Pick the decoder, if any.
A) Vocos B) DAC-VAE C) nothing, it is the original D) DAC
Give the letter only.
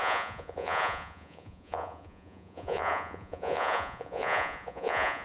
A